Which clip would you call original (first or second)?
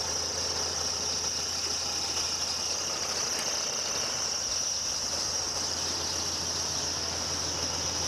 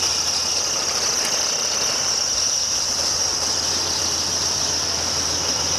first